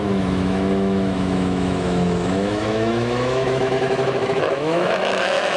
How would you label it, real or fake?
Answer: fake